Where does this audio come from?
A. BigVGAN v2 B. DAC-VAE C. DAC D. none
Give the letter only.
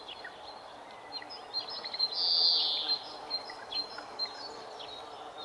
D